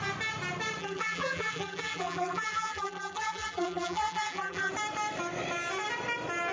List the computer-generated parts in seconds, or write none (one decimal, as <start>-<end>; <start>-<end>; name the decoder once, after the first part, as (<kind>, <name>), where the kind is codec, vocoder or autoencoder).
0.8-4.7 (vocoder, BigVGAN v2)